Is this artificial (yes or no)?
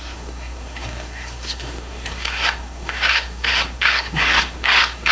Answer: yes